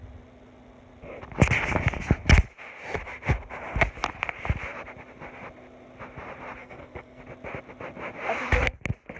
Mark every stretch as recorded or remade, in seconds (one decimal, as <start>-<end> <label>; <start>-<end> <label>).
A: 0.0-6.6 recorded; 6.6-7.2 remade; 7.2-9.2 recorded

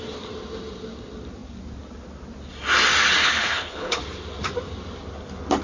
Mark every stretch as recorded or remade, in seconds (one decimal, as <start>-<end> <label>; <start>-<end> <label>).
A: 0.0-3.2 recorded; 3.2-4.0 remade; 4.0-5.6 recorded